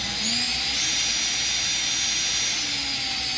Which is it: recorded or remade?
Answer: recorded